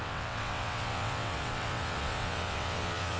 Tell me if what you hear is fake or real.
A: fake